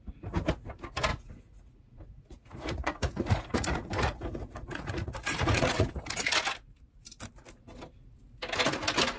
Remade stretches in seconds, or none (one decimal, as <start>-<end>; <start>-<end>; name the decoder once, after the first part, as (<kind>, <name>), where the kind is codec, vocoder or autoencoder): 1.1-5.9 (vocoder, Vocos)